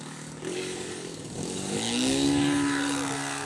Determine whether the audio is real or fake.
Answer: fake